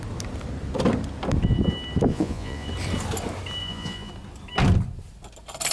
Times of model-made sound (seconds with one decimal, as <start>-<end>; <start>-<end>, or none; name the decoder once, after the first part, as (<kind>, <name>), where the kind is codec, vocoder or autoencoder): 2.1-2.7 (vocoder, Vocos); 3.6-4.1